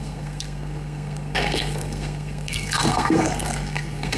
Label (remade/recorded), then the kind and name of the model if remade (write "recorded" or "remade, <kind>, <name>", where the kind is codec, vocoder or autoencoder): remade, codec, SNAC